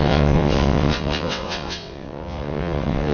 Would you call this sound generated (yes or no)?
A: yes